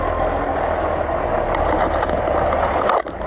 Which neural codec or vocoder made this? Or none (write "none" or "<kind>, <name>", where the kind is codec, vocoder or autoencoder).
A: none